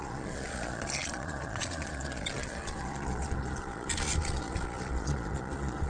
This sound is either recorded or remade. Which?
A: remade